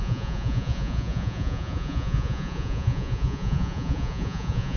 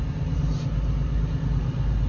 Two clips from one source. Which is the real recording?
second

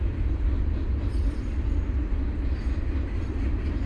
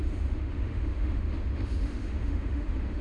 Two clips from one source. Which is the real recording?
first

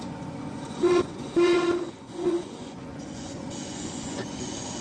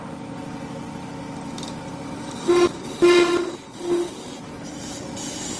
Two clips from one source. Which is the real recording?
second